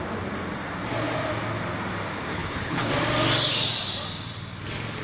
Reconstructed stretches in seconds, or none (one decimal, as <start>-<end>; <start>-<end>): 2.3-2.9